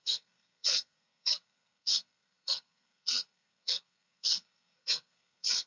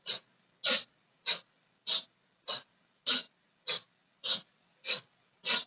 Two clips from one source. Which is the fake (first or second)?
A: first